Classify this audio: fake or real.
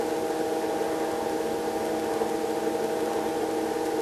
real